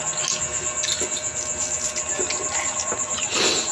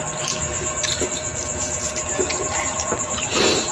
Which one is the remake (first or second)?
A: second